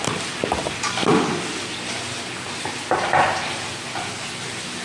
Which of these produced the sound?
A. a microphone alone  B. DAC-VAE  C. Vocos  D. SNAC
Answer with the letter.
A